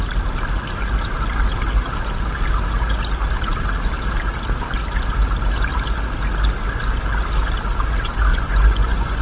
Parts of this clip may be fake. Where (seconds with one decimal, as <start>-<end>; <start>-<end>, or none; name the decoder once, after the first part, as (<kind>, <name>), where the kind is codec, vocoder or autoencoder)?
8.3-9.2 (vocoder, Vocos)